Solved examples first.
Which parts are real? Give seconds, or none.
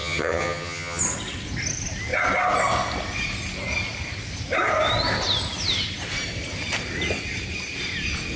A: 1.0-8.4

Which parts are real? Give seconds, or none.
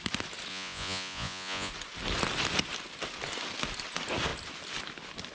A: 0.0-0.5; 1.7-5.3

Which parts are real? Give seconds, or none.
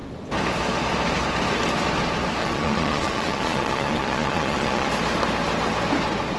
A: 0.0-2.4; 4.9-6.4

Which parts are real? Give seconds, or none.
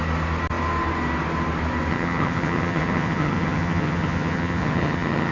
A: 0.0-1.9